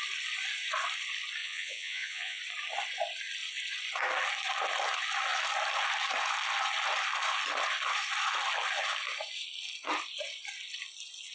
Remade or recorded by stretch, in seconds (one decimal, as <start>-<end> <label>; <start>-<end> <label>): 0.0-1.4 recorded; 1.4-2.4 remade; 2.4-11.3 recorded